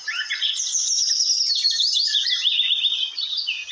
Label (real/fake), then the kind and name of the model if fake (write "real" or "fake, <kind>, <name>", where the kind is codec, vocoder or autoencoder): fake, vocoder, BigVGAN v2